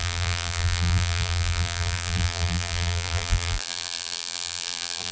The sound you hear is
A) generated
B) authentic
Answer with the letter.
A